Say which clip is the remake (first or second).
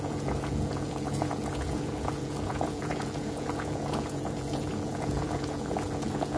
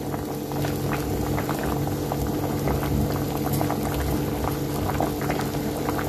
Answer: first